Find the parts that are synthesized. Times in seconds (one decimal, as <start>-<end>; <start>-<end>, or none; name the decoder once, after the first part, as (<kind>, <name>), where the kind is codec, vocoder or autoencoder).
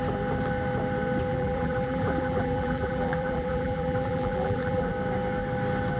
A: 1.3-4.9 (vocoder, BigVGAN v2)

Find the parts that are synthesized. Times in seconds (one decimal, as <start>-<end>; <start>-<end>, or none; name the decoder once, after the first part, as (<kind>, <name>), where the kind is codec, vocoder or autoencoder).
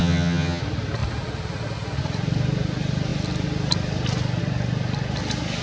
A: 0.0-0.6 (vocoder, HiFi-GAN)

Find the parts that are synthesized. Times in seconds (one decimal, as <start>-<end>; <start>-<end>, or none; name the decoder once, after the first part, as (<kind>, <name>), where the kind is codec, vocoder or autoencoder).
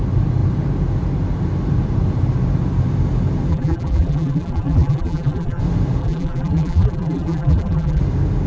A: 3.5-5.6 (vocoder, BigVGAN v2); 6.0-8.0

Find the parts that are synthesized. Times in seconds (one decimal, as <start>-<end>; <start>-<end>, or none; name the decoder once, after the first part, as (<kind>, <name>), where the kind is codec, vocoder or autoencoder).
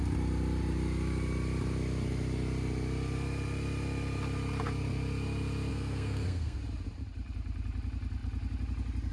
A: 5.7-6.6 (codec, SNAC)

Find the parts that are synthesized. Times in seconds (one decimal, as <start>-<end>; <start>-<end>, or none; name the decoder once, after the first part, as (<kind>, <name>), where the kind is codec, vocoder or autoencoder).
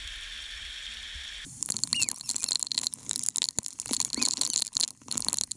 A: none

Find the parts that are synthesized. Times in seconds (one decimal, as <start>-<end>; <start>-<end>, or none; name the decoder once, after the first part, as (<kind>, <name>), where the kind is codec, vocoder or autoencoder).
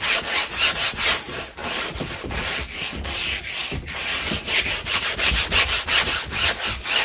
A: 1.6-2.6 (vocoder, BigVGAN v2); 3.6-5.9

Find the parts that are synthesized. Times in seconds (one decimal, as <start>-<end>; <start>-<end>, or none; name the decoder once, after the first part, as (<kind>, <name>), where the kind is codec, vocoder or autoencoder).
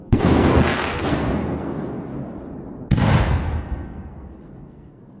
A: 0.0-2.1 (codec, SNAC); 3.2-5.2